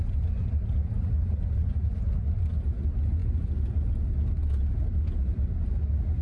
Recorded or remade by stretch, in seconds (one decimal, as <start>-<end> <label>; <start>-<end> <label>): 0.0-6.2 recorded